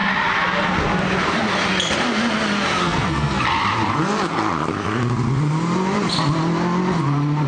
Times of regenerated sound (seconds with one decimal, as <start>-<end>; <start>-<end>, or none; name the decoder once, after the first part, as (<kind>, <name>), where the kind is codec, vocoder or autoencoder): 2.8-3.4 (codec, SNAC)